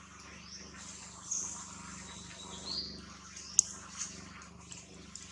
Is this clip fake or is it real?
real